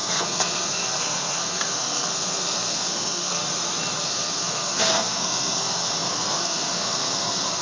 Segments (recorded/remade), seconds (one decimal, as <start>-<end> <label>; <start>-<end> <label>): 0.0-3.4 remade; 3.4-4.0 recorded; 4.0-7.6 remade